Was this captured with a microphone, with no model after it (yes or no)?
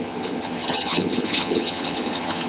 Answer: no